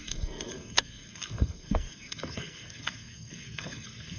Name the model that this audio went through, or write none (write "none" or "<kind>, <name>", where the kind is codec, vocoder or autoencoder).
codec, SNAC